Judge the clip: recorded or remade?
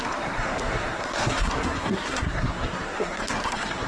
remade